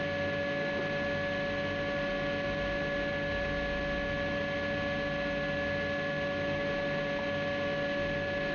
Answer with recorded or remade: recorded